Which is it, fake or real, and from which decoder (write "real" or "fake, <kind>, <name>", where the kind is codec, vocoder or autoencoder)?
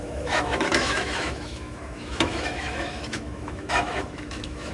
fake, autoencoder, DAC-VAE